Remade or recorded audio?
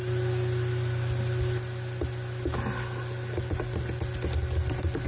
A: recorded